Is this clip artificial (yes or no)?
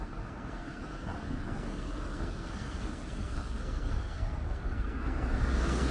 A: yes